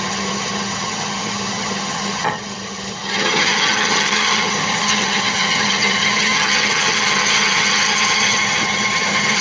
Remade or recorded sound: remade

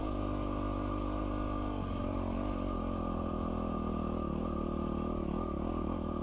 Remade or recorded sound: recorded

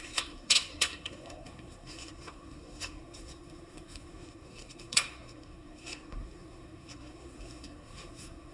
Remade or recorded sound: remade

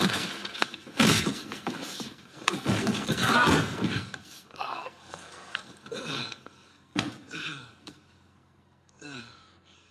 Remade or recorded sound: remade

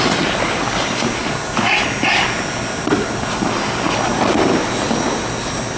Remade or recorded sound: recorded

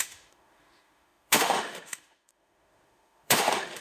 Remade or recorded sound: remade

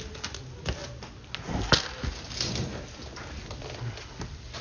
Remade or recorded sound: recorded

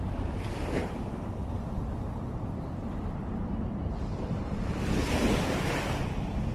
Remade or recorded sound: recorded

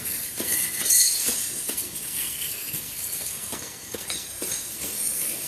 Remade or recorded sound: remade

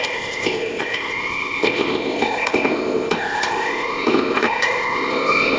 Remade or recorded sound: remade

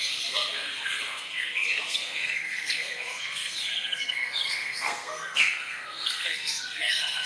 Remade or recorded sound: remade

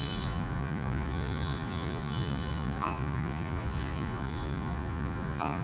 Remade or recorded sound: remade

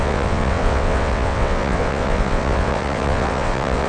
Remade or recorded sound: remade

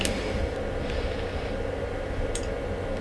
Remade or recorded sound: recorded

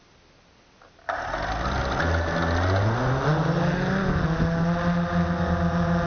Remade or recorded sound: recorded